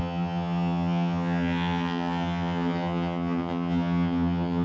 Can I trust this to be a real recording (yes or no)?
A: no